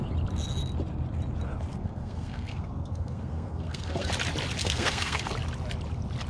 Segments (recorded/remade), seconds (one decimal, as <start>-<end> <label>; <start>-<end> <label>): 0.0-1.7 recorded; 1.7-4.1 remade; 4.1-4.6 recorded; 4.6-5.3 remade; 5.3-6.3 recorded